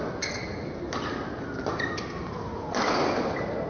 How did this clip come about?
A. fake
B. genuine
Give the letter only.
B